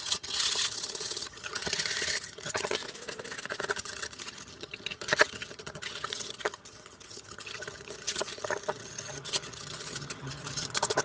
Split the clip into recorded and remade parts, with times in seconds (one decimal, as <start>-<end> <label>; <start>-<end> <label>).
0.0-2.8 remade; 2.8-3.7 recorded; 3.7-11.0 remade